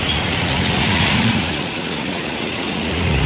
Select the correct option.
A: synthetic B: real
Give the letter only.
A